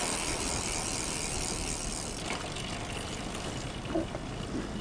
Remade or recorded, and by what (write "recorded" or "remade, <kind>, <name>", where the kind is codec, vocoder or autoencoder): recorded